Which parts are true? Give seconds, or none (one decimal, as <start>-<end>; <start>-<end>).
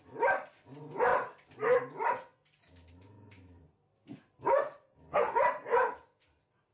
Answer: 4.4-6.0